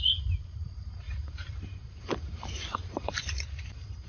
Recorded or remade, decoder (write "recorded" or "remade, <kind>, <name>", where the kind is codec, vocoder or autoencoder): remade, vocoder, BigVGAN v2